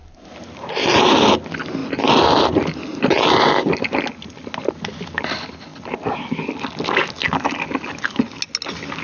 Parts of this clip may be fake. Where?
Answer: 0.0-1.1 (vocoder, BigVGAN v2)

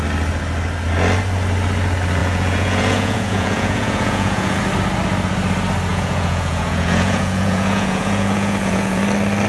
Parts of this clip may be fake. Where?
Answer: 2.2-4.6 (vocoder, Vocos); 5.9-9.0

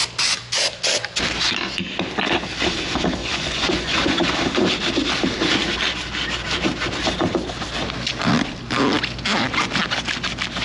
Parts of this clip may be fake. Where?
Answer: 3.2-4.3 (vocoder, Vocos)

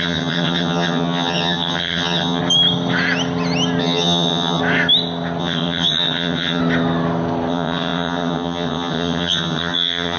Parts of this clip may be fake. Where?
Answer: 0.0-2.4 (vocoder, HiFi-GAN); 3.8-4.6; 5.4-6.6; 7.5-10.2